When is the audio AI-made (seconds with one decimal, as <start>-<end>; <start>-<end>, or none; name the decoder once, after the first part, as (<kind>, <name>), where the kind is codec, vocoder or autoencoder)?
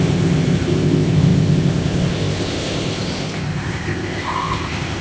0.0-5.0 (codec, ZipCodec)